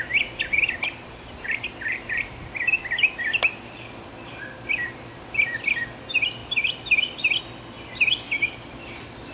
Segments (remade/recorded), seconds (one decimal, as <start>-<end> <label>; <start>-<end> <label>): 0.0-3.3 recorded; 3.3-4.4 remade; 4.4-6.4 recorded; 6.4-7.4 remade; 7.4-9.3 recorded